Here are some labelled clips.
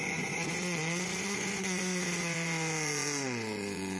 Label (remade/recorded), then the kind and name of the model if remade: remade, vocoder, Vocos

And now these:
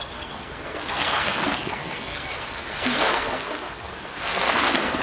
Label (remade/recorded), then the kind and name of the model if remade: remade, codec, SNAC